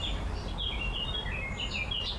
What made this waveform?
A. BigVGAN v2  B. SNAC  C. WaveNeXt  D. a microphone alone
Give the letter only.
D